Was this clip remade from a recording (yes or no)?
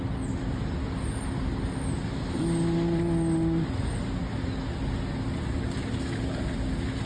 no